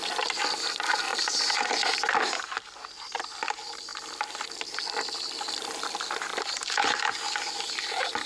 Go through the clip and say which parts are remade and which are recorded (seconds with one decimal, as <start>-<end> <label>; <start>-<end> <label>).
0.0-6.3 remade; 6.3-7.7 recorded; 7.7-8.3 remade